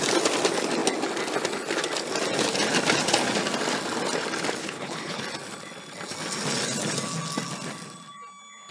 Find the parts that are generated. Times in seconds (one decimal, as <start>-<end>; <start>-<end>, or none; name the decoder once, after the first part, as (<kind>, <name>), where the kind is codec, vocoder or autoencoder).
4.6-5.2 (codec, HILCodec)